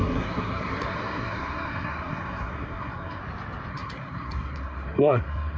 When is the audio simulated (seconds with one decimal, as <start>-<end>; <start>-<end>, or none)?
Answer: 0.0-3.2; 3.7-5.6